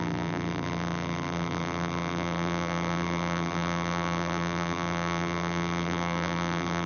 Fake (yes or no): yes